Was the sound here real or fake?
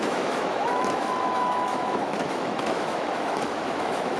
fake